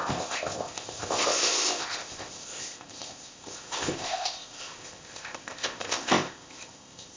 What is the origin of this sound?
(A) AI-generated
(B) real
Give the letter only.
A